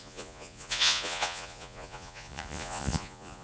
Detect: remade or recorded remade